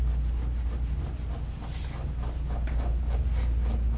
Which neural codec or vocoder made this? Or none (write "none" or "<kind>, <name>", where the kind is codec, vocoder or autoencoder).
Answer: none